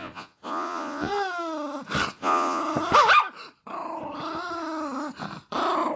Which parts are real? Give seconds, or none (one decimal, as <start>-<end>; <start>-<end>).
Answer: 1.1-2.1; 2.6-6.0